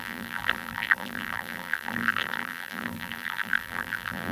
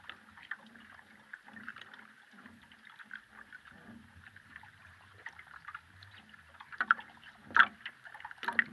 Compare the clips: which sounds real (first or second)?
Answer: second